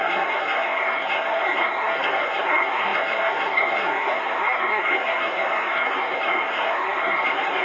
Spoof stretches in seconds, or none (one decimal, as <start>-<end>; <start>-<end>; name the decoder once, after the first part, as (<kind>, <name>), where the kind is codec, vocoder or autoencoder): 0.0-7.6 (codec, SNAC)